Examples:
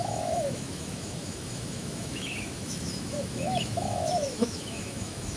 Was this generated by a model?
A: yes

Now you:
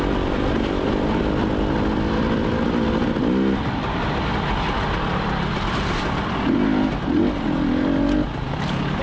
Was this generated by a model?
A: no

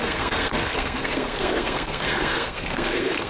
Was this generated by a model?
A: yes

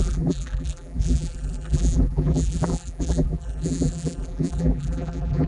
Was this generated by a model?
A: yes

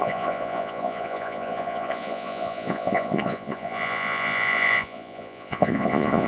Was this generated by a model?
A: yes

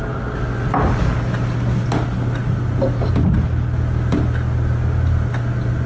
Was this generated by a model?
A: no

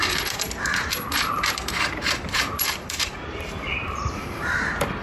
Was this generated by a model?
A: yes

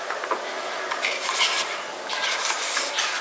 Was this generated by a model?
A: no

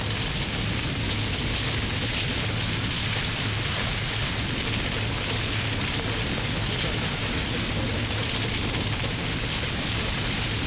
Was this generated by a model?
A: no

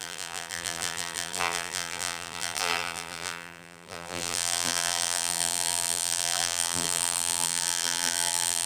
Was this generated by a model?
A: yes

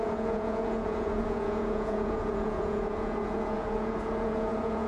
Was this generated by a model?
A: yes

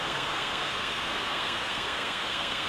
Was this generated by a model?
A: yes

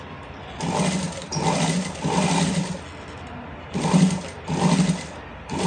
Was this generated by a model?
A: no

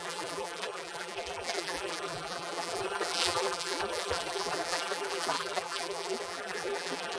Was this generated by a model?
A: yes